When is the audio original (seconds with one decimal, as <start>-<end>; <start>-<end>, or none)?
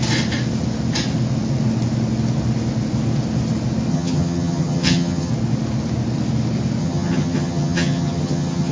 0.0-3.9; 5.3-6.8